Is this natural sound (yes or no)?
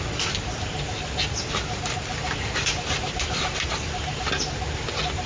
yes